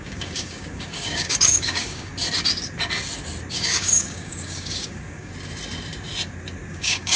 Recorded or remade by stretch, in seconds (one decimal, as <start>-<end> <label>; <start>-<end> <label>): 0.0-2.1 remade; 2.1-3.5 recorded; 3.5-5.3 remade; 5.3-6.7 recorded; 6.7-7.2 remade